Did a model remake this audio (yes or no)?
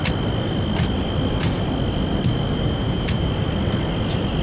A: no